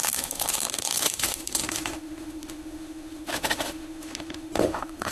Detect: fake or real fake